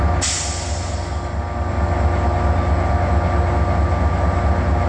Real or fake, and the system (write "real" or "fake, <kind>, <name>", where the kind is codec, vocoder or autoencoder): real